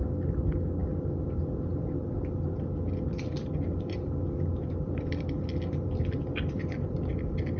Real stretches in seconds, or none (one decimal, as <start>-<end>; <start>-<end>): 0.0-3.3; 7.1-7.6